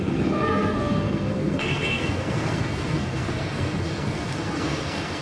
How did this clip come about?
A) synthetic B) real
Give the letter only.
A